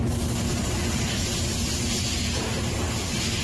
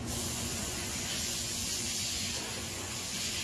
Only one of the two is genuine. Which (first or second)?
first